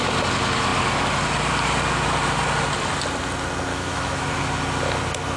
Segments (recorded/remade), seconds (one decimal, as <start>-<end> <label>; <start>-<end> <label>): 0.0-3.7 recorded; 3.7-4.4 remade; 4.4-5.4 recorded